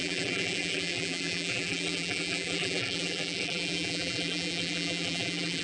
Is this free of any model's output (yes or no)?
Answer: no